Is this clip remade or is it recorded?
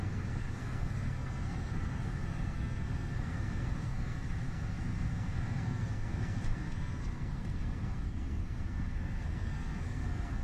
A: remade